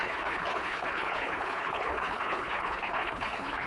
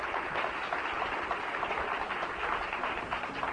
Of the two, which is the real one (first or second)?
second